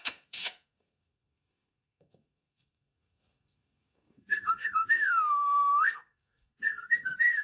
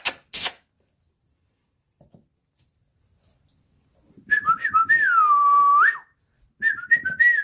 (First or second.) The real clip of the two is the second